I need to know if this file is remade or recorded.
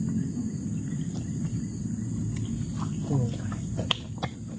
recorded